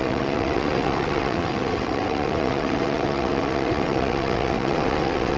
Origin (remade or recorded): remade